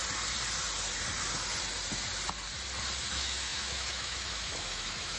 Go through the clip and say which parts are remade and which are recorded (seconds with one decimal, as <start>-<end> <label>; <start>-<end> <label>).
0.0-3.1 recorded; 3.1-5.2 remade